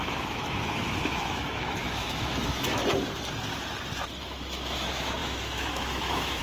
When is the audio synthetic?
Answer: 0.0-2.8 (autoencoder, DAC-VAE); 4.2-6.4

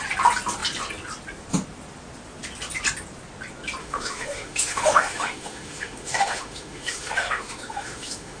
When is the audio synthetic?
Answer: 3.8-8.4 (autoencoder, DAC-VAE)

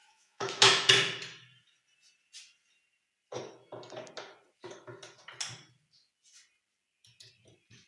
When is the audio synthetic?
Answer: 0.0-0.9 (autoencoder, DAC-VAE)

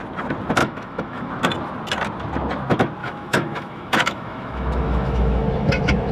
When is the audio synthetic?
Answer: 0.6-1.3 (autoencoder, DAC-VAE); 3.0-6.1

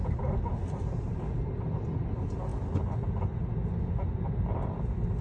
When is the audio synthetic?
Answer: none